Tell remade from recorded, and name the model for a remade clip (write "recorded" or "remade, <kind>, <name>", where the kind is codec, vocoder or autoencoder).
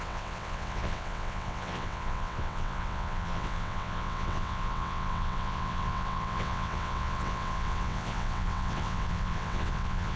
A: remade, vocoder, WaveNeXt